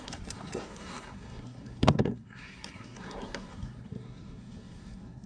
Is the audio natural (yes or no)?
no